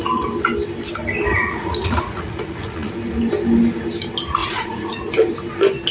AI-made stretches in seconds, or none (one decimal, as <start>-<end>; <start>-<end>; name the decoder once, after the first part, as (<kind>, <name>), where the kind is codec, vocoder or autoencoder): 1.3-2.9 (vocoder, Vocos); 4.4-5.0